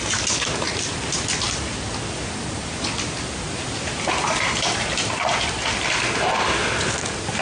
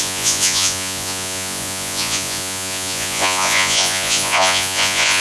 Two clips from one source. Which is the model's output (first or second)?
second